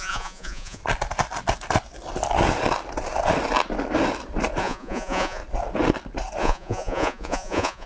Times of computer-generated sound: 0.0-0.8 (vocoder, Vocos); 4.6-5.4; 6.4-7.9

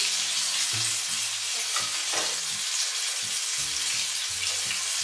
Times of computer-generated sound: none

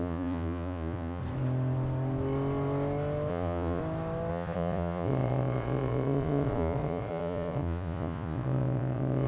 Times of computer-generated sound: 0.0-1.2 (vocoder, Vocos); 3.3-3.8; 4.3-9.3

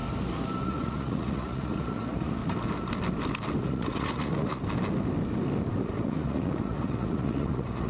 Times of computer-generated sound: 0.6-2.4 (vocoder, Vocos); 3.6-4.6; 5.8-7.9

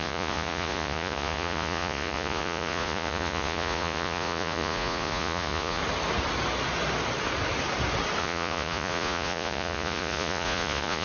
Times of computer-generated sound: 0.0-5.8 (vocoder, Vocos); 8.2-11.0